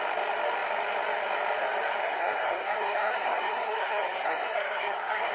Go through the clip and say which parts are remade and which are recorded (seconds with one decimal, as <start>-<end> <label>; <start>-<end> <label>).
0.0-2.0 recorded; 2.0-5.3 remade